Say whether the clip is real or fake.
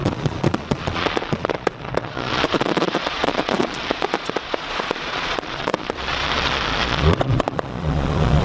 fake